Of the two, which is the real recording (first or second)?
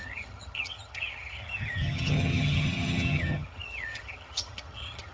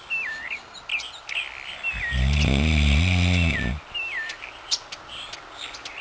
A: second